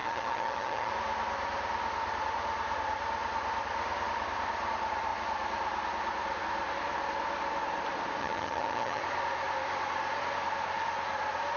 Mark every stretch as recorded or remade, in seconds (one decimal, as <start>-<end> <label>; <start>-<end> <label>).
0.0-0.9 remade; 0.9-8.2 recorded; 8.2-9.0 remade; 9.0-11.6 recorded

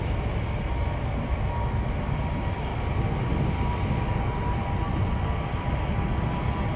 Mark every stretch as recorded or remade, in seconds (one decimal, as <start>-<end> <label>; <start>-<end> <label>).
0.0-6.8 recorded

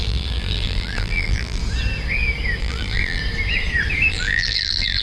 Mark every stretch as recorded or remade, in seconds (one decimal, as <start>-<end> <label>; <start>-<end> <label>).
0.0-1.6 remade; 1.6-2.6 recorded; 2.6-3.2 remade; 3.2-4.1 recorded; 4.1-5.0 remade

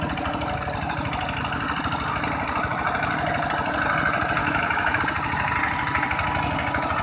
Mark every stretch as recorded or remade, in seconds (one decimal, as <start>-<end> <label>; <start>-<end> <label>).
0.0-4.4 recorded; 4.4-5.0 remade; 5.0-7.0 recorded